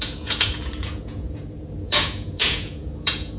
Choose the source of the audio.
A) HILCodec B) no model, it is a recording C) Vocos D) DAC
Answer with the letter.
C